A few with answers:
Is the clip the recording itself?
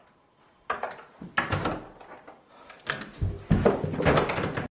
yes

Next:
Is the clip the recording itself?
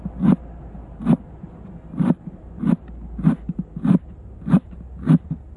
yes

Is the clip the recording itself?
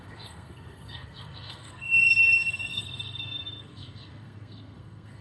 no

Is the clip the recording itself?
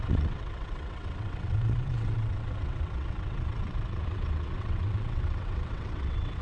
no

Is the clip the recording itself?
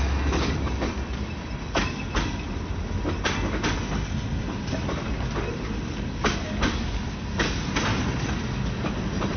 yes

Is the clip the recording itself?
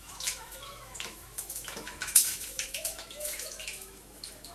no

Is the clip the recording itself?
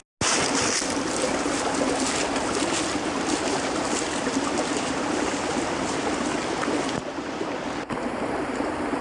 yes